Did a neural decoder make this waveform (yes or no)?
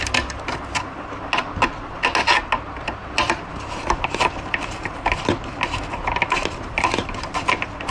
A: no